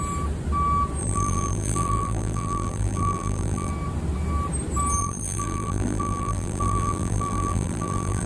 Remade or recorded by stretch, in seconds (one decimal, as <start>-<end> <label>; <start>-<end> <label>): 0.0-1.0 recorded; 1.0-3.7 remade; 3.7-5.0 recorded; 5.0-8.3 remade